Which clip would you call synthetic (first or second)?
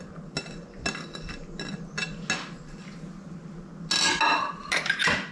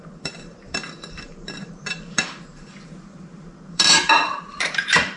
second